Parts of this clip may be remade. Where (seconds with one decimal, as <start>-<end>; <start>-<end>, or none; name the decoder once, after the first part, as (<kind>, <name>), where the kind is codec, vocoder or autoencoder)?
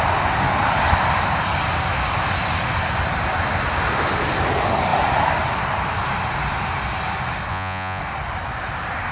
7.5-8.0 (vocoder, Vocos)